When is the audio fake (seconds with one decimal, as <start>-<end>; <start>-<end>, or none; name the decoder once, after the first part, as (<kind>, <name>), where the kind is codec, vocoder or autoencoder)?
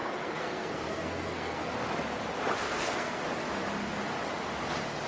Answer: 0.0-1.6 (codec, SNAC); 2.6-3.2